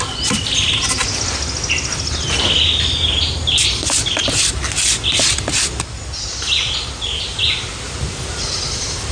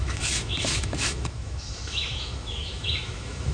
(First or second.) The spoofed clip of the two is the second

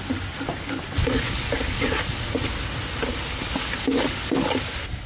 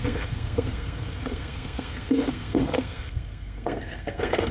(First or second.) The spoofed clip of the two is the second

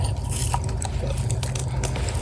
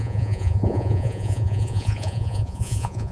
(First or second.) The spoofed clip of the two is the second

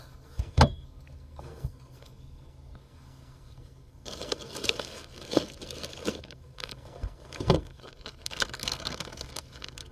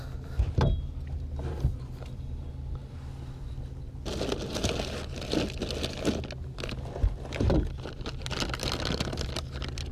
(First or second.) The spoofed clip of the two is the first